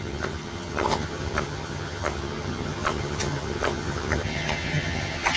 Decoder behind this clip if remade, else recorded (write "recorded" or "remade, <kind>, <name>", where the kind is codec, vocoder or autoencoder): remade, vocoder, HiFi-GAN